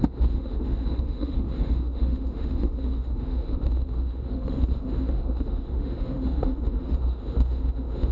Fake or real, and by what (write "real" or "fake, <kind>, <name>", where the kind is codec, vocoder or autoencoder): fake, autoencoder, DAC-VAE